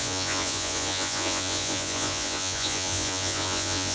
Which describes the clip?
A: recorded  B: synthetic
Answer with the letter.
B